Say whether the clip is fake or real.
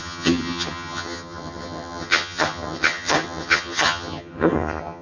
fake